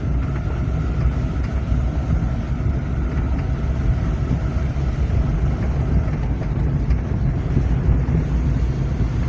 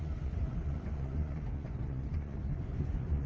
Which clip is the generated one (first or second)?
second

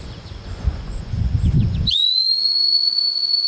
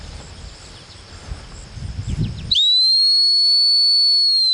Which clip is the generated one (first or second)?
first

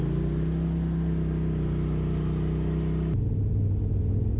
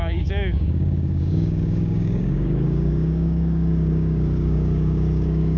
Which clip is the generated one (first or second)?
second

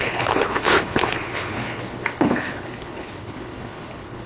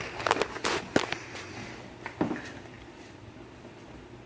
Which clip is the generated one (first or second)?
first